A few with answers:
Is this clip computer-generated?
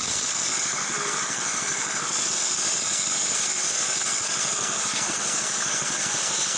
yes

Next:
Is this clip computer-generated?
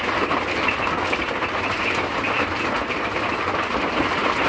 no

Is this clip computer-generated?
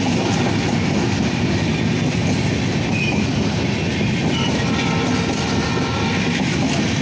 no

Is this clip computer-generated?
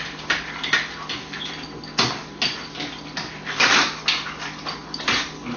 no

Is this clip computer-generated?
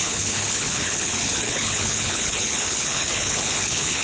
yes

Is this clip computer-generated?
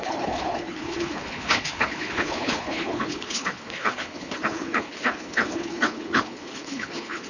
yes